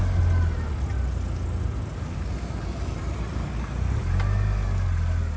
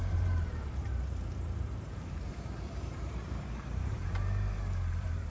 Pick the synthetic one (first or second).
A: second